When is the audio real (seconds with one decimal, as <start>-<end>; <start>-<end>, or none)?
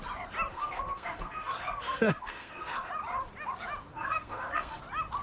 0.0-0.5; 2.9-3.9; 4.8-5.2